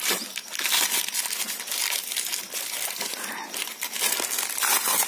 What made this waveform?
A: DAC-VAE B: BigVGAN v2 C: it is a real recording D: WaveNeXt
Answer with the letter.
C